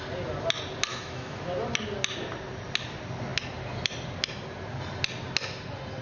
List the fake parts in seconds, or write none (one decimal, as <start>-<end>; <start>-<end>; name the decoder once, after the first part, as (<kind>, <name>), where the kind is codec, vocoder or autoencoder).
0.9-1.4 (autoencoder, DAC-VAE)